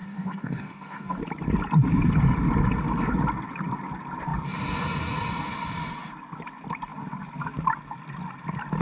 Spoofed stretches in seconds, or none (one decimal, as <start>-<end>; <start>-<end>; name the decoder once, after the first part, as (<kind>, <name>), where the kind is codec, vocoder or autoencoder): 0.0-1.2 (codec, DAC)